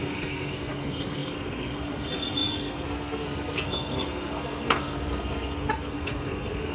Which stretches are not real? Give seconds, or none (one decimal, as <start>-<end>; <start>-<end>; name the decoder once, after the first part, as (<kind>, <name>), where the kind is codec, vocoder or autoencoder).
0.0-6.7 (codec, SNAC)